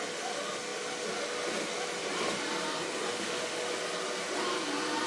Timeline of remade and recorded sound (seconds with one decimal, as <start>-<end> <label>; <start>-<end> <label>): 0.0-3.1 recorded; 3.1-3.7 remade; 3.7-5.1 recorded